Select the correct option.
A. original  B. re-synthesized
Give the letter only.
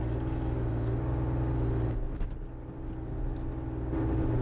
A